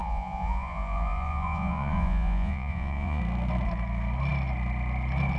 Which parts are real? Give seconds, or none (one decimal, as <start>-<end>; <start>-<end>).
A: 3.2-5.4